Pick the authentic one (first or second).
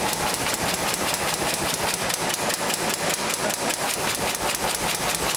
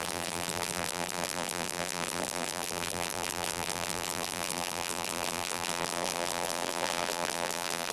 first